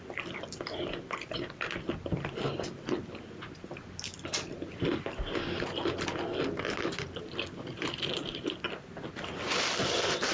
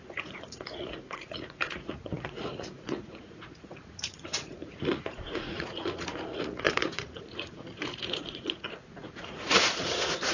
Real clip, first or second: first